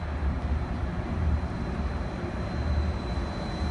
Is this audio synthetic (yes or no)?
yes